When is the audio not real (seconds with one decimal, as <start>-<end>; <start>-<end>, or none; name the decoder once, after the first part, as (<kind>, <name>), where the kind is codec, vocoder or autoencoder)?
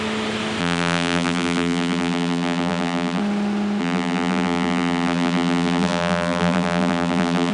0.6-3.2 (vocoder, BigVGAN v2); 3.8-7.5